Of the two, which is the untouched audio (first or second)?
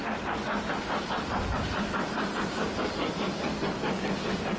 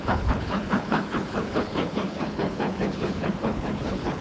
first